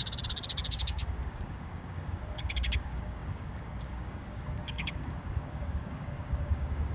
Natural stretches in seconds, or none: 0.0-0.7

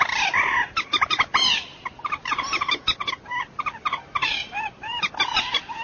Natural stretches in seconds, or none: 0.0-5.8

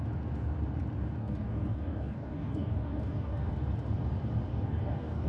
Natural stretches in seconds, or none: 0.0-1.2; 3.5-4.5

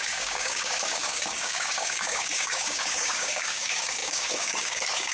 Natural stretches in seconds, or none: none

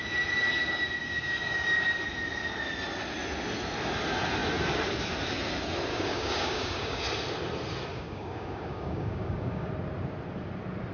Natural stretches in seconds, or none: 0.0-1.0; 2.0-5.9; 7.0-7.9; 9.7-10.9

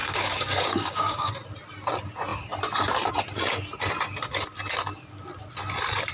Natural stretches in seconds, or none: 1.3-6.1

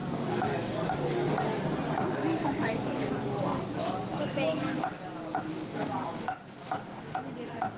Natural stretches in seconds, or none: 1.3-2.3; 3.1-5.5; 6.8-7.8